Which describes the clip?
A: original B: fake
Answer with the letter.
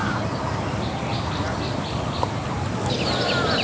A